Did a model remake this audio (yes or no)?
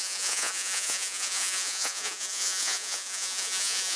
yes